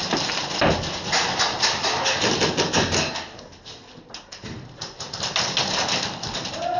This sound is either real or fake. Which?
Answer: real